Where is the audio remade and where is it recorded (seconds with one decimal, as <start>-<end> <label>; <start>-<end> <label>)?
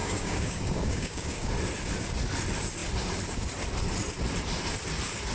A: 0.0-1.5 remade; 1.5-5.3 recorded